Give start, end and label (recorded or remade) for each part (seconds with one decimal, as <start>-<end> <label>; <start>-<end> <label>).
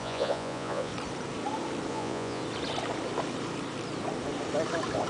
0.0-0.9 remade; 0.9-1.9 recorded; 1.9-2.4 remade; 2.4-5.1 recorded